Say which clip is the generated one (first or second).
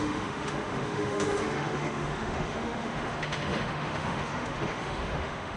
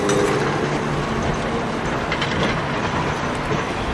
first